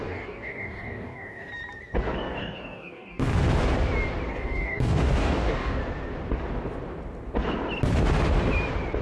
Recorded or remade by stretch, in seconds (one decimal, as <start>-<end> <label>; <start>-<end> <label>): 0.0-1.5 remade; 1.5-2.3 recorded; 2.3-3.3 remade; 3.3-4.3 recorded; 4.3-5.8 remade; 5.8-9.0 recorded